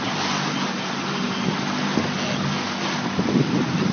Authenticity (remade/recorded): recorded